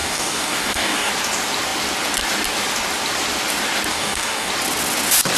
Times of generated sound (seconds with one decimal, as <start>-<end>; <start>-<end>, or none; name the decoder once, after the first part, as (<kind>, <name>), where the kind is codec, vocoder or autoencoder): 0.0-1.1 (codec, DAC); 3.9-4.5